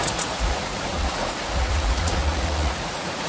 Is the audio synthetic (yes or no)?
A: yes